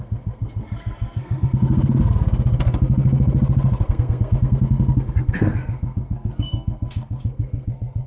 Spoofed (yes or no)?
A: yes